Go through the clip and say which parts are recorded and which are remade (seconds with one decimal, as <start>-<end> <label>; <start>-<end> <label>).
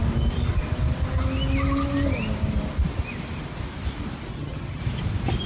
0.0-4.3 recorded; 4.3-4.8 remade; 4.8-5.5 recorded